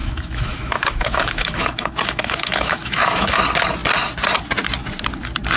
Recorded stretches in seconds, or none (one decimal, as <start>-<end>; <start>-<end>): 3.4-5.6

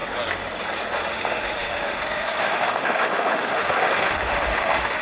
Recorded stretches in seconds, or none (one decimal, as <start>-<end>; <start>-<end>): 0.0-1.1

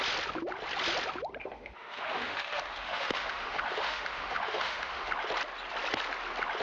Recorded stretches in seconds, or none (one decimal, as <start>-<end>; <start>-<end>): 0.0-1.4; 5.1-6.6

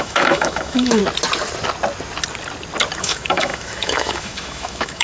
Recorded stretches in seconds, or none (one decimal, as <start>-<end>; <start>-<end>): 1.0-3.0

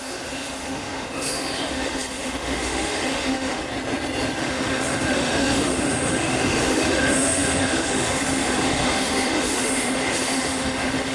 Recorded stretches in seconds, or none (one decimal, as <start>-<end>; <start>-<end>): 3.6-4.4